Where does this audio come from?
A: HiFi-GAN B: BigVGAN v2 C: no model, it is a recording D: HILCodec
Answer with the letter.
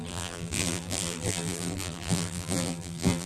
B